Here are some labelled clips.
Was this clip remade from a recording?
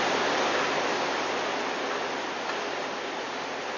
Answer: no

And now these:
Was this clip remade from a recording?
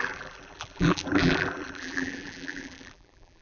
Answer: yes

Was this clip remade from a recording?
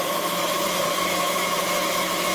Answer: yes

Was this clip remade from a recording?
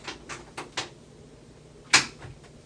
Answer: no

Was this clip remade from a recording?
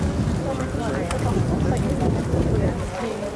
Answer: no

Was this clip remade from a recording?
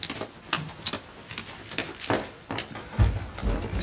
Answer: no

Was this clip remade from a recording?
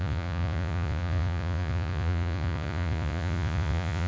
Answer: yes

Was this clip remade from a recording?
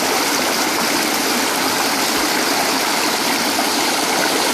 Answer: no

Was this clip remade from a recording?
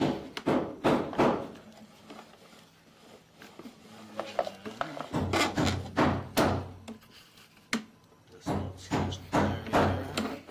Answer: no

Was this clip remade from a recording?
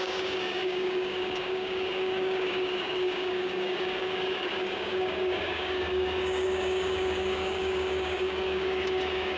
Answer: yes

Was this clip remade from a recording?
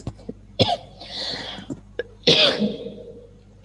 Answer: yes